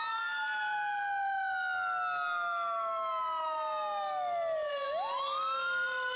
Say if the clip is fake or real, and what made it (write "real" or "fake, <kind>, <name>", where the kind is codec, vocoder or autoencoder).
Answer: real